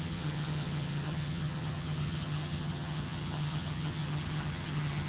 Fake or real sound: fake